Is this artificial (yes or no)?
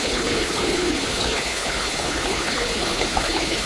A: yes